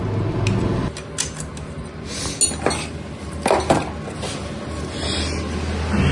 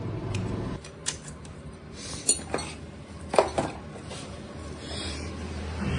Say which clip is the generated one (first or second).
second